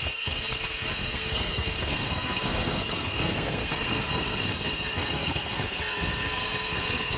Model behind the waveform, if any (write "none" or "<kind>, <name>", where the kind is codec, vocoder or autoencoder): codec, SNAC